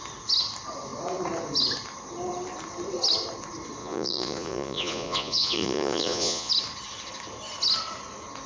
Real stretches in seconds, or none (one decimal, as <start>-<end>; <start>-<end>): 0.0-3.8; 6.5-8.5